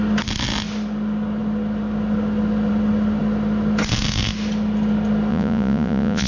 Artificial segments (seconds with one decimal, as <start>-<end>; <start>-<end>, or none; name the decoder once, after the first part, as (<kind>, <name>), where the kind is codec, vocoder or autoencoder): 5.3-6.3 (vocoder, Vocos)